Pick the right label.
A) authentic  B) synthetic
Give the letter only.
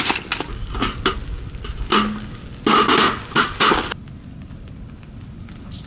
A